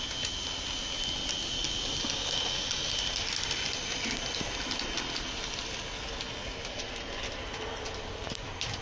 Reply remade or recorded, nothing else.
recorded